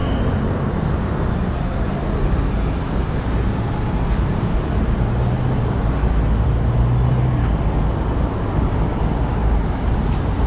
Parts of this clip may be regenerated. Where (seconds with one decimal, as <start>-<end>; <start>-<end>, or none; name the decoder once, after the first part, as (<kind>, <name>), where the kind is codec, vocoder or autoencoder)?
none